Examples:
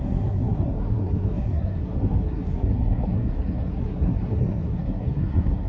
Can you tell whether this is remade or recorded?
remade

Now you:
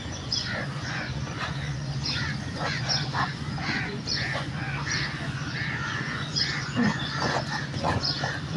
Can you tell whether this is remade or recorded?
remade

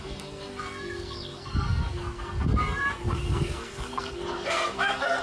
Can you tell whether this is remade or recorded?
remade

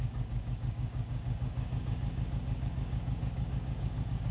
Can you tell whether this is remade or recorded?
remade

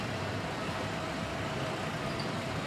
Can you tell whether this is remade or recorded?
recorded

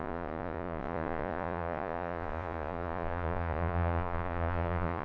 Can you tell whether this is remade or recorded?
remade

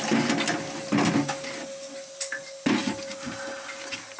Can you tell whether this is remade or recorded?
recorded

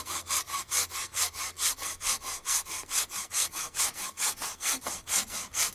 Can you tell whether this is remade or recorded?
remade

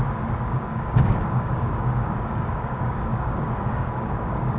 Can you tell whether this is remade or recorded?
remade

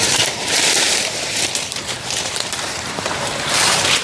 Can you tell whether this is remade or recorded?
remade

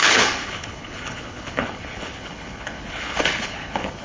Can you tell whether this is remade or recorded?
remade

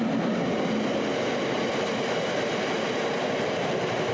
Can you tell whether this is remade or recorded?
recorded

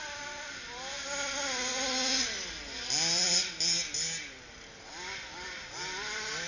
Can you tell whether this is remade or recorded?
recorded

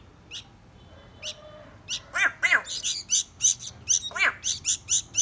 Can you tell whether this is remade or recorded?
recorded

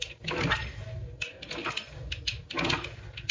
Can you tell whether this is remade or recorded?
recorded